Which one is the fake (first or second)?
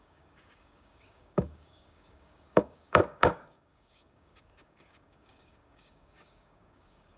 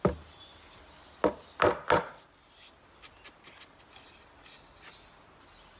first